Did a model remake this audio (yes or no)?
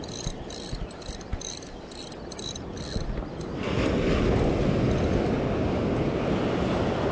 no